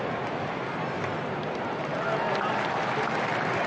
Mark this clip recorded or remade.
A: recorded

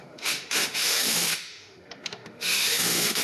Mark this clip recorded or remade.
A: remade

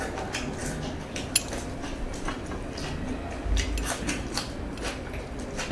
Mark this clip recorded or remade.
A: recorded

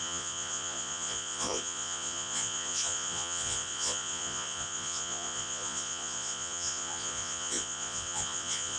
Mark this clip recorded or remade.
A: remade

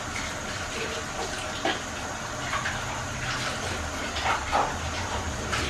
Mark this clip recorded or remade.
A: recorded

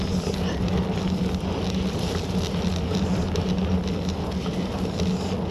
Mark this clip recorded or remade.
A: recorded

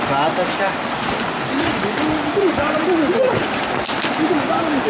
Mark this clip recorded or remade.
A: recorded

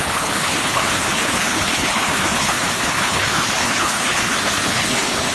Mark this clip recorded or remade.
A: remade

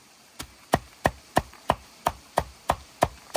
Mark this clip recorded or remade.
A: remade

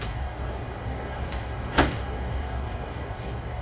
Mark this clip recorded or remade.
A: remade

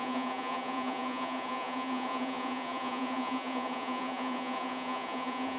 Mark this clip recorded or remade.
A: remade